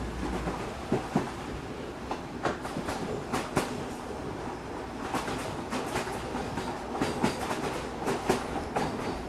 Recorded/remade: recorded